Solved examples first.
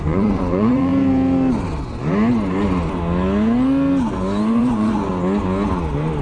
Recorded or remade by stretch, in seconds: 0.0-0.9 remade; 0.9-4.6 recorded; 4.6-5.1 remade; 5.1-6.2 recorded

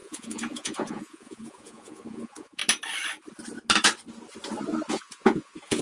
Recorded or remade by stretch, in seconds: 0.0-2.6 remade; 2.6-4.9 recorded; 4.9-5.8 remade

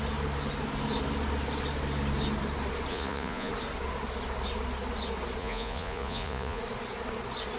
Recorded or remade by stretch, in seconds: 0.0-2.9 recorded; 2.9-3.5 remade; 3.5-5.4 recorded; 5.4-6.6 remade; 6.6-7.6 recorded

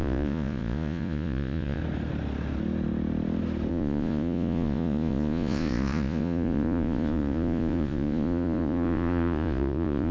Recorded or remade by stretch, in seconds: 0.0-1.8 remade; 1.8-3.7 recorded; 3.7-10.1 remade

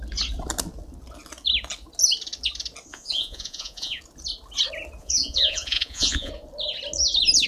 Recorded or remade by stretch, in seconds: 0.0-2.9 recorded; 2.9-4.0 remade; 4.0-5.0 recorded; 5.0-6.3 remade; 6.3-7.5 recorded

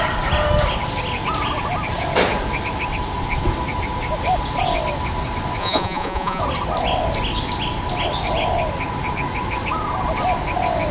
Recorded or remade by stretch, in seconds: 0.0-5.6 recorded; 5.6-6.4 remade; 6.4-10.9 recorded